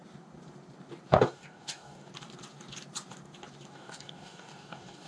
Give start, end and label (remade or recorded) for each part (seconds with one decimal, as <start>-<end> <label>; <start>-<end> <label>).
0.0-1.1 recorded; 1.1-2.1 remade; 2.1-3.7 recorded; 3.7-5.1 remade